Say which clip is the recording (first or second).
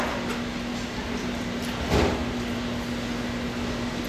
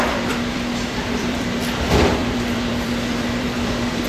first